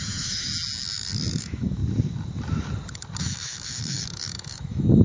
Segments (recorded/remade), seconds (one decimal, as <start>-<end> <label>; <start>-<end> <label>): 0.0-0.5 remade; 0.5-1.4 recorded; 1.4-1.8 remade; 1.8-3.2 recorded; 3.2-5.0 remade